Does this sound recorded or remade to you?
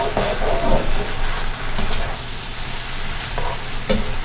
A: recorded